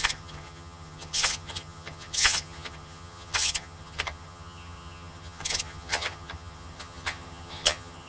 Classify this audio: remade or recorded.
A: remade